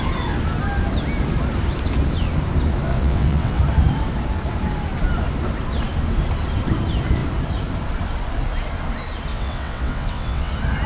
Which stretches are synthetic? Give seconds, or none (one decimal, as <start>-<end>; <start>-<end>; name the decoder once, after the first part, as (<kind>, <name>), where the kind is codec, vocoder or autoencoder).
2.9-3.6 (vocoder, WaveNeXt); 9.3-10.5